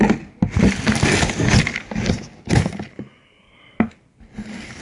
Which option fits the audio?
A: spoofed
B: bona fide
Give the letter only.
B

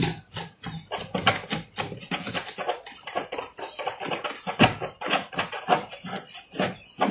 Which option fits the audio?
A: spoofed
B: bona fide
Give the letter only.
B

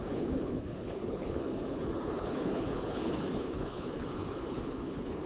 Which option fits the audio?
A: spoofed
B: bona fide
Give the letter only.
A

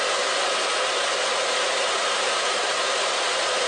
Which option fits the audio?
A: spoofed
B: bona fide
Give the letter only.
B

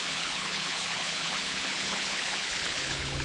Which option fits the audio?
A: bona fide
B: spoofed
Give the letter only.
B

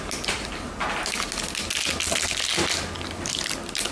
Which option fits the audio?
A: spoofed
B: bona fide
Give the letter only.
B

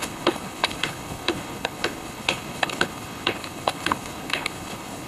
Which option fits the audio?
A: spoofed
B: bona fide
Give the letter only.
A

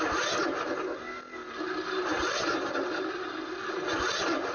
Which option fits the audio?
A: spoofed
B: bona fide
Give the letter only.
B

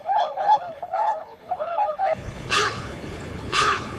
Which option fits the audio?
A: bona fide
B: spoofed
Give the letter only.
B